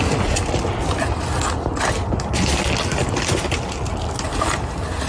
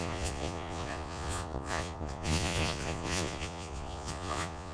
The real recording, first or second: first